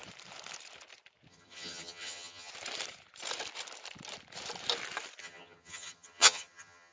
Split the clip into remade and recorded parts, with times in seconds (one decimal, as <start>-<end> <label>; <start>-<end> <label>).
0.0-1.3 recorded; 1.3-2.5 remade; 2.5-5.2 recorded; 5.2-6.9 remade